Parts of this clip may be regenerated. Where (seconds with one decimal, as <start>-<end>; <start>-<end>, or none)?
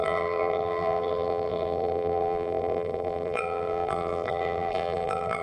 0.0-5.4